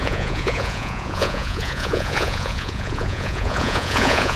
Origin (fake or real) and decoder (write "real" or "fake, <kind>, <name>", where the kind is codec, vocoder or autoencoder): fake, vocoder, Vocos